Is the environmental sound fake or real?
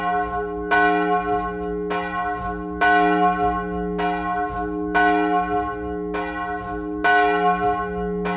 real